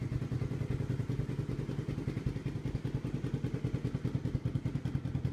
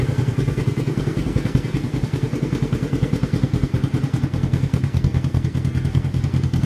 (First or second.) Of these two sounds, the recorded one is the first